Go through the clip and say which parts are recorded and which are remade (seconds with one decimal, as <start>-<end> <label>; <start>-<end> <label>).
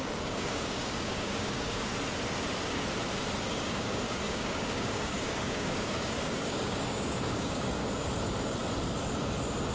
0.0-1.9 remade; 1.9-3.4 recorded; 3.4-7.8 remade; 7.8-9.7 recorded